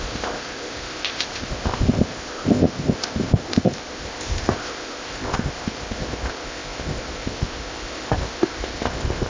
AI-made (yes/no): yes